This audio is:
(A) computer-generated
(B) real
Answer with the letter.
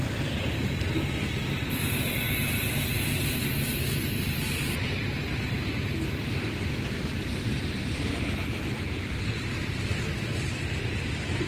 B